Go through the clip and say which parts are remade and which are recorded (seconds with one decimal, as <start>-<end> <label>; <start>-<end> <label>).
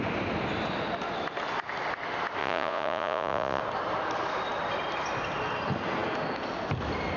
0.0-2.4 recorded; 2.4-3.6 remade; 3.6-7.2 recorded